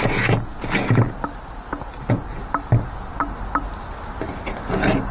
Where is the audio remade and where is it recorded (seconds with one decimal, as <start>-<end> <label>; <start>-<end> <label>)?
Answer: 0.0-5.1 recorded